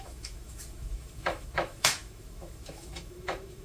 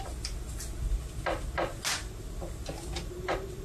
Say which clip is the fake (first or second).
first